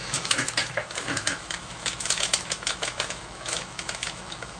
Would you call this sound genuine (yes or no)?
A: no